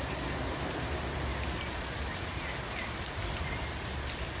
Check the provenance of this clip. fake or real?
real